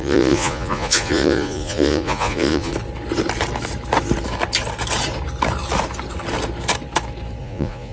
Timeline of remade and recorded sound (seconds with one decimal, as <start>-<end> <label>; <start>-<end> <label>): 0.0-2.7 remade; 2.7-7.4 recorded; 7.4-7.9 remade